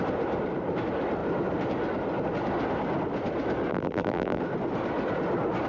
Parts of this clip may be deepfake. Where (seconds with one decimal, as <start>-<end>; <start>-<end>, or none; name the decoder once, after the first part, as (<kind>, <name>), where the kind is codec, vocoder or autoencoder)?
3.7-4.4 (vocoder, BigVGAN v2)